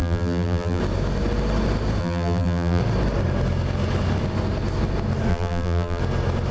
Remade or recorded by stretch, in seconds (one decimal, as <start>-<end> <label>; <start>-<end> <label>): 0.0-0.8 remade; 0.8-2.0 recorded; 2.0-2.8 remade; 2.8-5.3 recorded; 5.3-6.0 remade; 6.0-6.5 recorded